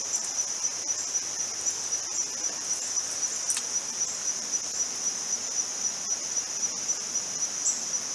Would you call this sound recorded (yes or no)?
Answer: yes